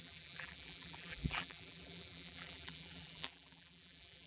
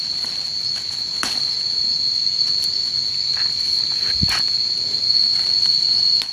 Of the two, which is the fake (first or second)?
first